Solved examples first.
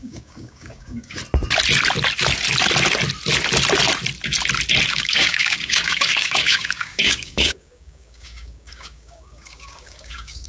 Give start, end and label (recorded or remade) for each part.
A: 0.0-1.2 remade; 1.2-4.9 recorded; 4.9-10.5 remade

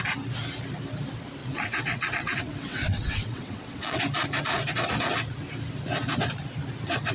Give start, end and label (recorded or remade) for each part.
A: 0.0-1.4 recorded; 1.4-4.0 remade; 4.0-7.1 recorded

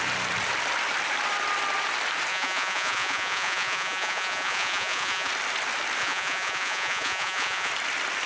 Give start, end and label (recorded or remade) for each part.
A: 0.0-2.3 recorded; 2.3-5.3 remade; 5.3-6.0 recorded; 6.0-7.7 remade; 7.7-8.3 recorded

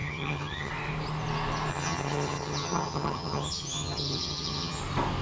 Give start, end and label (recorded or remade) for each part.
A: 0.0-0.7 remade; 0.7-1.7 recorded; 1.7-4.8 remade; 4.8-5.2 recorded

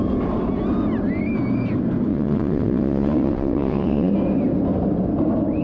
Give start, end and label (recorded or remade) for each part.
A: 0.0-2.1 recorded; 2.1-4.1 remade; 4.1-5.6 recorded

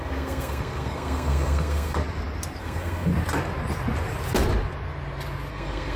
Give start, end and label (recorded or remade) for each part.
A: 0.0-2.0 remade; 2.0-2.6 recorded; 2.6-3.1 remade; 3.1-5.5 recorded; 5.5-6.0 remade